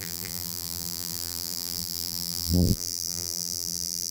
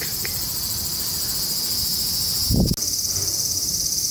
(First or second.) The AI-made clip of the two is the first